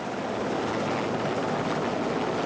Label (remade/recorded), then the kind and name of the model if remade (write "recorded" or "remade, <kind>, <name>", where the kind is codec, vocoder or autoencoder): recorded